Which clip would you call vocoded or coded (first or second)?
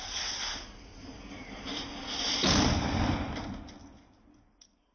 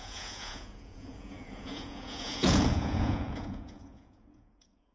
second